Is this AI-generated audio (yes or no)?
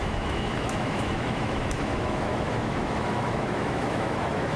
yes